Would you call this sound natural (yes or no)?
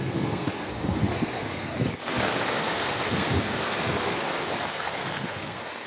no